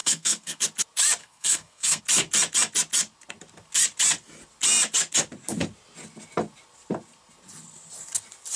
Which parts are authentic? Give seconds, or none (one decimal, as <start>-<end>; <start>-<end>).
0.6-1.2; 2.0-8.6